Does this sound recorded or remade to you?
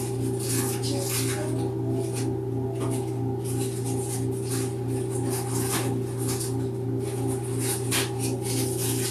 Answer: recorded